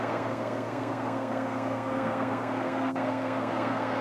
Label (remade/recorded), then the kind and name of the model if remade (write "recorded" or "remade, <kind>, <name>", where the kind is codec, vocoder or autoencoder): remade, codec, SNAC